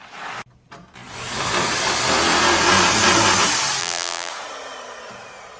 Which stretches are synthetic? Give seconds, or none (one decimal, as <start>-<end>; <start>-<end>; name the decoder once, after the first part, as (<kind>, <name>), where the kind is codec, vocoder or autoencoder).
3.8-4.3 (vocoder, BigVGAN v2)